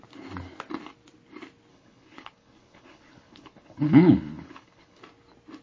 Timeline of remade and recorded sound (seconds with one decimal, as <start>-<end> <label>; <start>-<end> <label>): 0.0-1.7 recorded; 1.7-5.0 remade; 5.0-5.6 recorded